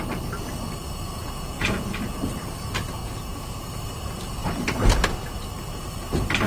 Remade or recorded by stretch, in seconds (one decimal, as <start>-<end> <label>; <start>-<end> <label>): 0.0-1.2 recorded; 1.2-2.2 remade; 2.2-3.0 recorded; 3.0-3.6 remade; 3.6-6.5 recorded